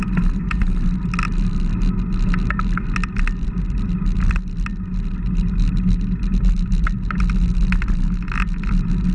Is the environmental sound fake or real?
real